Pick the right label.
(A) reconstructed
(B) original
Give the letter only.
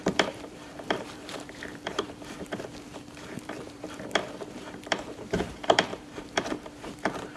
A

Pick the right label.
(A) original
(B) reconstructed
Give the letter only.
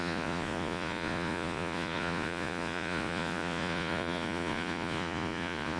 B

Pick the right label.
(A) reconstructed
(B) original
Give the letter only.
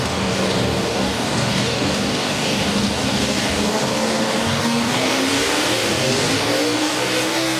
A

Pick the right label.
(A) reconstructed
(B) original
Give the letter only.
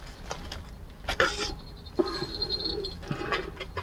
B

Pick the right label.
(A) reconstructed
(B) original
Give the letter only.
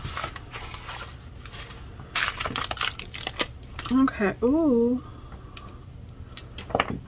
B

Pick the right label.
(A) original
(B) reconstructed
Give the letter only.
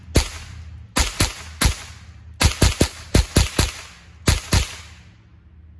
A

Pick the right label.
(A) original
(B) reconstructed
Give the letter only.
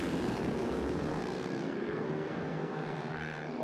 B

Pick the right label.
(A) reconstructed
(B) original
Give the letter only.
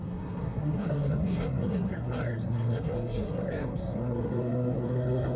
A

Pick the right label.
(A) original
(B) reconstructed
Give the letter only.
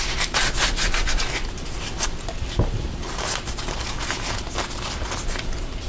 A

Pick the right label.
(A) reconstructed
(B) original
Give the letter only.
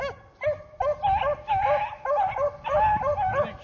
B